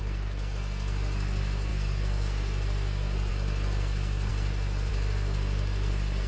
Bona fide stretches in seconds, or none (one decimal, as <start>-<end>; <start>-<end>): none